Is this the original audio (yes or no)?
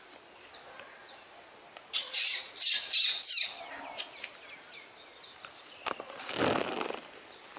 yes